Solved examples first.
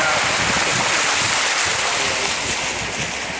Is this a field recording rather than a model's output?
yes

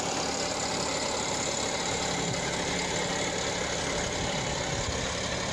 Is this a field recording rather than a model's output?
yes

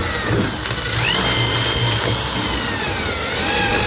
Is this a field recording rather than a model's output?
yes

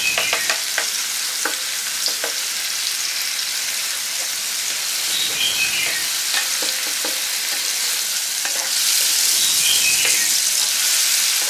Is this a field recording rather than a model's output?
yes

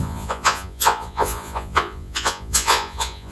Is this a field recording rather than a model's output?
no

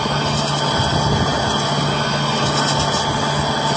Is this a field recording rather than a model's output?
yes